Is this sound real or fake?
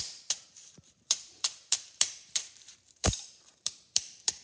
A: fake